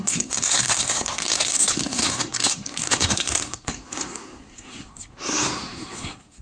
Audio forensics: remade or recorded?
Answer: remade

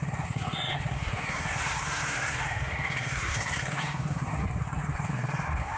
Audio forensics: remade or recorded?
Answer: remade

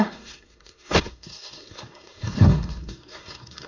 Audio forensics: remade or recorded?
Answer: remade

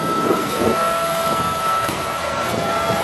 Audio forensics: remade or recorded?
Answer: remade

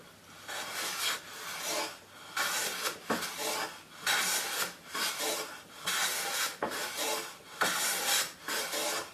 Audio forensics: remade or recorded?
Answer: recorded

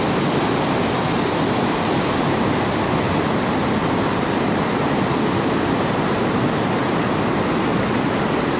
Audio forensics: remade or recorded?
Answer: recorded